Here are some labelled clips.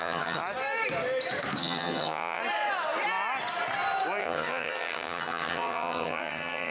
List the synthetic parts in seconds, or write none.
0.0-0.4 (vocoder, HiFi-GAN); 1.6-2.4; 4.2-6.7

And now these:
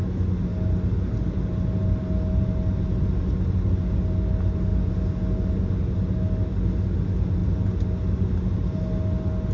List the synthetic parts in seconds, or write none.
none

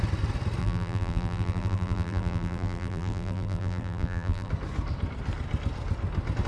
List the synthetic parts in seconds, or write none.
0.6-4.5 (vocoder, BigVGAN v2)

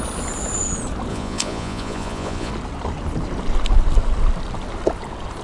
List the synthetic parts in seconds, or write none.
1.1-2.5 (vocoder, Vocos)

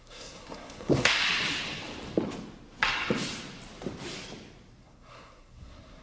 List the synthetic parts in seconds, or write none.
0.0-1.2 (codec, SNAC); 4.8-6.0

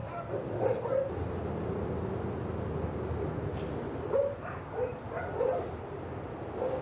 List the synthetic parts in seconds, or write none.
none

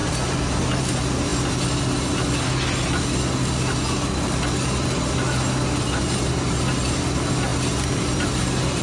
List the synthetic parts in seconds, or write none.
7.5-8.8 (vocoder, BigVGAN v2)

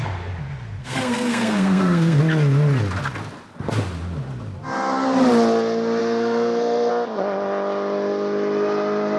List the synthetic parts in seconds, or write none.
0.8-2.2 (codec, SNAC); 6.0-6.9